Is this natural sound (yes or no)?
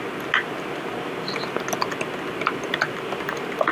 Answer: yes